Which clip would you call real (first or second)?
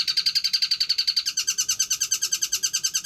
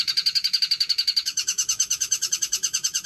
first